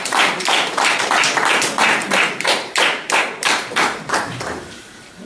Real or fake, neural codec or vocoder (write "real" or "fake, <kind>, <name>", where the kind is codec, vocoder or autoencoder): fake, vocoder, BigVGAN v2